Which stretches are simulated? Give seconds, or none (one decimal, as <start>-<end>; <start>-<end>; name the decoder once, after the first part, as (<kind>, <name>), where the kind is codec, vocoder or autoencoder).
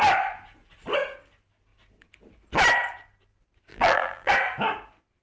3.7-4.3 (vocoder, BigVGAN v2)